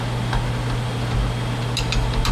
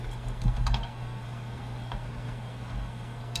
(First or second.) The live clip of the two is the first